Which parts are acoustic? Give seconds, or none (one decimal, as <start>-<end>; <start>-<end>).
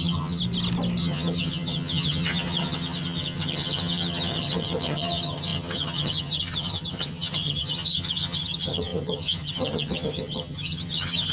0.4-1.0